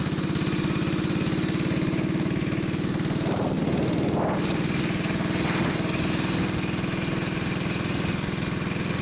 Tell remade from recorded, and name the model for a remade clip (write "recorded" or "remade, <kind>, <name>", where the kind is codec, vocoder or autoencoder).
recorded